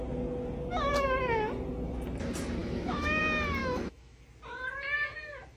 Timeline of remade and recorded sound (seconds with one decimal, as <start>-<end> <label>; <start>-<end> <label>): 0.0-2.6 recorded; 2.6-3.2 remade; 3.2-3.6 recorded; 3.6-4.2 remade; 4.2-5.6 recorded